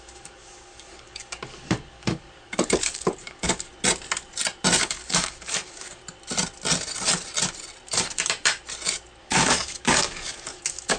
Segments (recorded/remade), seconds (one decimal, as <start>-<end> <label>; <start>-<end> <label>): 0.0-3.7 remade; 3.7-4.8 recorded; 4.8-6.0 remade; 6.0-9.2 recorded; 9.2-11.0 remade

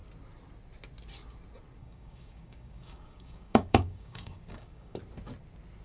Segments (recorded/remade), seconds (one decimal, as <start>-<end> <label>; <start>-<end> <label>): 0.0-1.8 recorded; 1.8-5.0 remade; 5.0-5.8 recorded

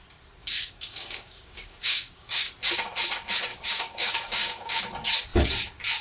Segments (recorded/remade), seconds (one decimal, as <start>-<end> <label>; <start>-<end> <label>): 0.0-0.4 recorded; 0.4-2.5 remade; 2.5-3.5 recorded; 3.5-4.8 remade; 4.8-6.0 recorded

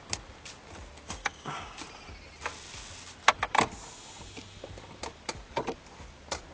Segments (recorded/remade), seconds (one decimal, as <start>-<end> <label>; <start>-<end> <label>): 0.0-1.2 recorded; 1.2-1.8 remade; 1.8-6.5 recorded

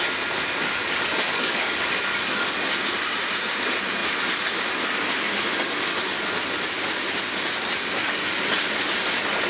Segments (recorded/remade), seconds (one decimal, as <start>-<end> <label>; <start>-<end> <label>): 0.0-0.8 recorded; 0.8-2.5 remade; 2.5-9.5 recorded

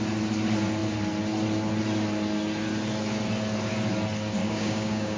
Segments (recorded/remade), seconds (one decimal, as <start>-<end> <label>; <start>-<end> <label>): 0.0-4.4 recorded; 4.4-5.2 remade